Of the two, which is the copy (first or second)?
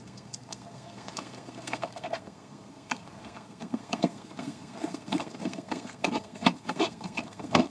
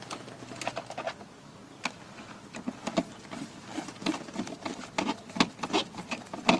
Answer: first